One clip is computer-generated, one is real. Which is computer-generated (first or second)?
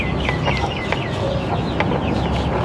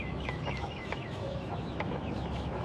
second